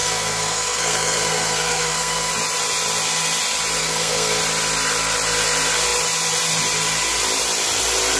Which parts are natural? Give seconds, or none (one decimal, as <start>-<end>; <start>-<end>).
2.3-3.8; 4.4-8.2